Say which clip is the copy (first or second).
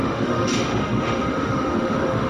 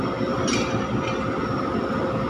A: first